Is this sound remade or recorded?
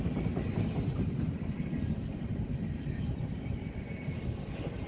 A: recorded